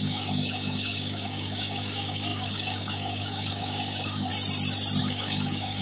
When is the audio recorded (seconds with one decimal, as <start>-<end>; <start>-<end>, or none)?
4.3-5.0